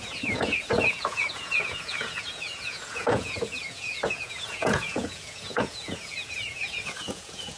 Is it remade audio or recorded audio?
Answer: remade